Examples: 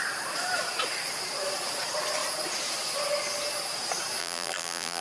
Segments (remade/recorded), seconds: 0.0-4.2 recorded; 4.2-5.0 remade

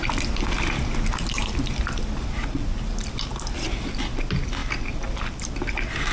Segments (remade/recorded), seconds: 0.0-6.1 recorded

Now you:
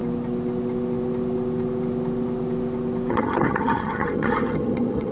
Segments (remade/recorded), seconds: 0.0-3.1 recorded; 3.1-5.1 remade